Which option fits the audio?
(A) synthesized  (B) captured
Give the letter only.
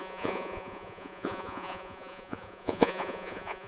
A